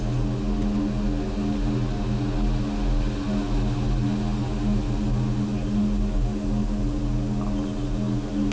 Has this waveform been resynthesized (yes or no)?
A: no